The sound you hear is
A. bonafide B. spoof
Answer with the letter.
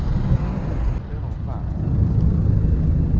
A